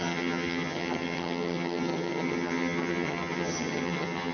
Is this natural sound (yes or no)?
no